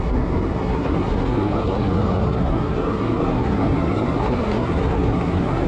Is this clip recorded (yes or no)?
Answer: no